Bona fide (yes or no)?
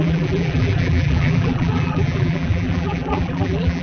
no